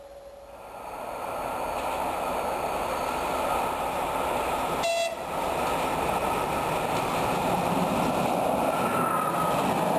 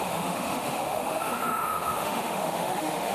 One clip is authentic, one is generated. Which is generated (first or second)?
second